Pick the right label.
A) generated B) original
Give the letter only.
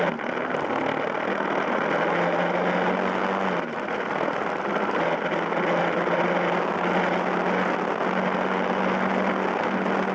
B